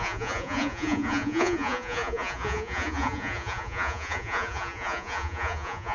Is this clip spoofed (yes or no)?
yes